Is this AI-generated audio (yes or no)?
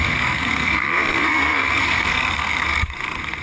yes